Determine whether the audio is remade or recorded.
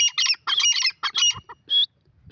recorded